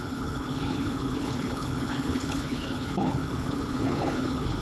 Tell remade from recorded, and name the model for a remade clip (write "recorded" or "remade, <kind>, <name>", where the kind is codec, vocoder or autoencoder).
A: remade, codec, HILCodec